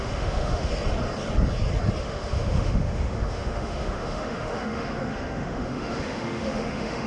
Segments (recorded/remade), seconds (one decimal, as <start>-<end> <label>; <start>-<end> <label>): 0.0-0.7 remade; 0.7-2.0 recorded; 2.0-7.1 remade